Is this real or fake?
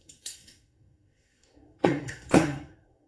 fake